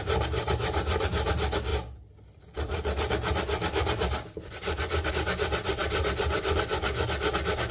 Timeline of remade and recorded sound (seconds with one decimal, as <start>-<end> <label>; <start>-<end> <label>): 0.0-7.7 recorded